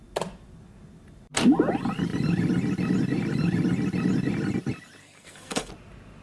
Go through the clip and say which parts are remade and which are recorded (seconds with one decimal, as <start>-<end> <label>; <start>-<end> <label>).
0.0-5.0 recorded; 5.0-5.7 remade; 5.7-6.2 recorded